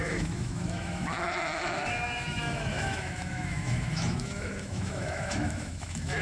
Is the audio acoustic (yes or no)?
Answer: no